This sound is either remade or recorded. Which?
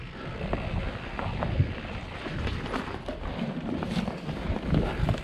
recorded